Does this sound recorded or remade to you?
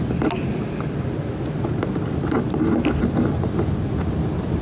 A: recorded